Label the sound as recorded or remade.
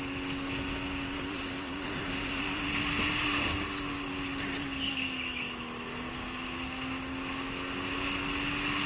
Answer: recorded